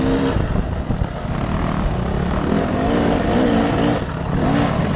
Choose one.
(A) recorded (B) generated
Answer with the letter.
A